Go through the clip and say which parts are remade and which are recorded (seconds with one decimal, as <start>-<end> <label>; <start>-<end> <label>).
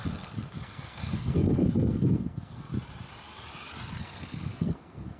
0.0-2.7 remade; 2.7-4.0 recorded; 4.0-5.2 remade